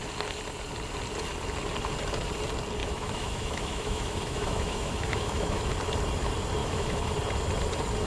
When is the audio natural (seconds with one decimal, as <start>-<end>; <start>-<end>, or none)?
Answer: 0.0-2.8; 5.7-6.6; 7.1-8.1